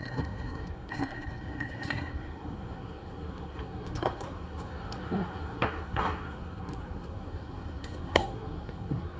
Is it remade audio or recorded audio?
remade